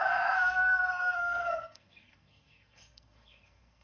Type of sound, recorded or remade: remade